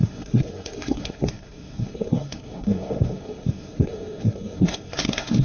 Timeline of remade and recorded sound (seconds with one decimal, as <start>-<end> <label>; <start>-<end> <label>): 0.0-5.4 remade